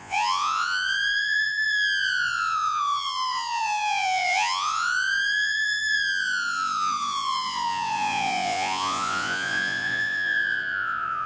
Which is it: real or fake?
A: fake